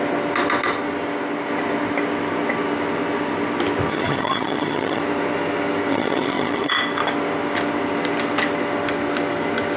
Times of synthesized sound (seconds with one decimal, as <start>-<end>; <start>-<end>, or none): 3.9-5.0; 5.9-6.7